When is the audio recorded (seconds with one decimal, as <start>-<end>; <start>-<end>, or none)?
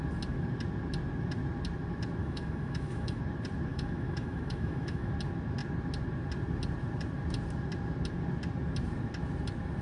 0.0-2.2; 3.2-3.7; 5.1-9.8